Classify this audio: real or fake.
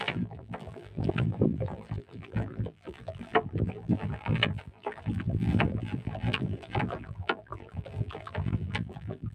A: fake